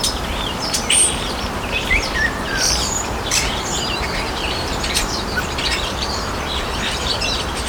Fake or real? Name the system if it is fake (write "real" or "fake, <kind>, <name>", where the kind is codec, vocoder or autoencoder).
fake, vocoder, BigVGAN v2